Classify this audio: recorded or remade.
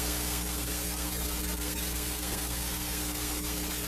remade